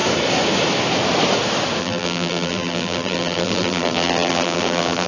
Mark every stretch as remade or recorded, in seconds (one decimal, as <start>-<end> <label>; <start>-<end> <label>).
0.0-1.8 recorded; 1.8-5.1 remade